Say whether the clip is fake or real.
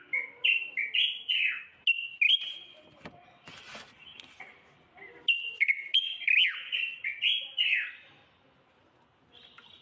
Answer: real